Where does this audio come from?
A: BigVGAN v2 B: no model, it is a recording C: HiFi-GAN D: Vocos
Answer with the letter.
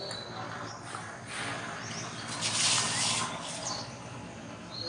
B